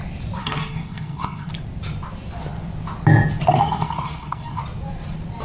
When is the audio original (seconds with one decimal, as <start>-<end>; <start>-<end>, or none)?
0.0-0.4; 1.5-3.5; 4.6-5.4